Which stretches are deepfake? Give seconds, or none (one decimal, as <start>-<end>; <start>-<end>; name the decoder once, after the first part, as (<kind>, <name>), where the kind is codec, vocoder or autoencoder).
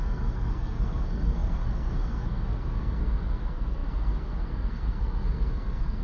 0.0-6.0 (codec, SNAC)